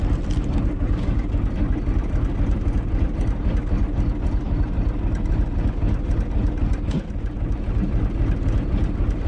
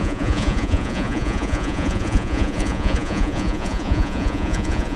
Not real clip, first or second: second